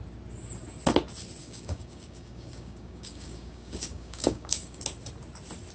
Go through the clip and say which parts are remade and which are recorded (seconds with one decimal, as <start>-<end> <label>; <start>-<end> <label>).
0.0-1.4 recorded; 1.4-4.8 remade; 4.8-5.7 recorded